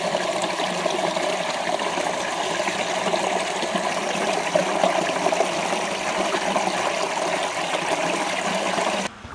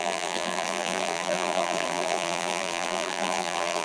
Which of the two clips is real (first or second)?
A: first